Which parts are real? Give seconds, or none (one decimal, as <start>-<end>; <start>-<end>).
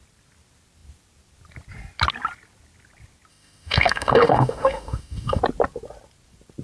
0.0-3.3; 5.4-6.6